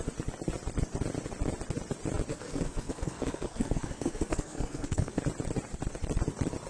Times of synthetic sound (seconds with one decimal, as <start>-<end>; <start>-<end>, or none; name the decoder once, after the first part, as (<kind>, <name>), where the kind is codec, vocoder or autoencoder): 2.3-5.2 (codec, SNAC)